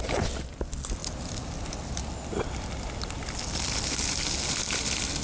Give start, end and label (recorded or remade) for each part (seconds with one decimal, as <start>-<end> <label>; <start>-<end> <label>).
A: 0.0-1.0 recorded; 1.0-2.5 remade; 2.5-5.2 recorded